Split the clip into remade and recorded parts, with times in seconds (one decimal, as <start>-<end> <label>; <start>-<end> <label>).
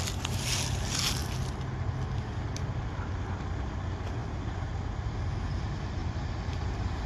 0.0-6.0 recorded; 6.0-7.1 remade